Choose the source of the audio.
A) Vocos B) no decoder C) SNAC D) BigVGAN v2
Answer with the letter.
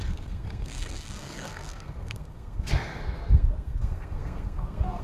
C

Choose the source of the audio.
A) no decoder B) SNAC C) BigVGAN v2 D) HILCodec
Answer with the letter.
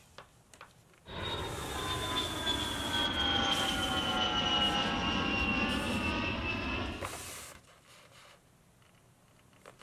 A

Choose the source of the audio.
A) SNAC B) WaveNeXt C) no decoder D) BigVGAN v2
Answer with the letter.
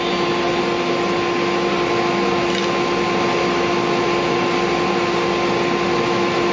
C